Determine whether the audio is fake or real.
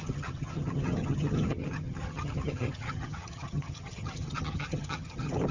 fake